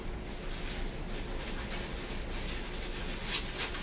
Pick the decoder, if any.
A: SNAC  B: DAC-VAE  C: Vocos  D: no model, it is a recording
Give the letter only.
D